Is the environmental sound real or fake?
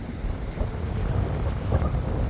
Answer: real